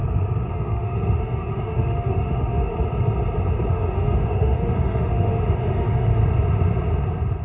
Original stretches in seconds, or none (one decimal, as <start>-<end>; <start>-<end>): 0.0-0.5; 2.7-3.7; 6.2-7.4